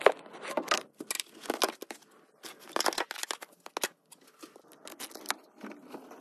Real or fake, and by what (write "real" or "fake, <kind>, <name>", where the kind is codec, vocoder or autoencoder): real